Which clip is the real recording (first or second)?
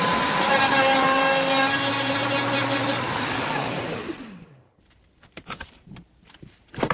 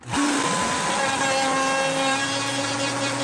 second